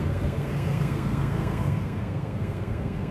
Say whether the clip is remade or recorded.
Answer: remade